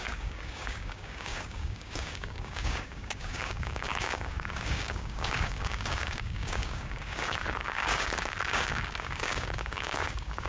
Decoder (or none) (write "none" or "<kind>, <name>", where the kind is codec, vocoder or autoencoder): codec, DAC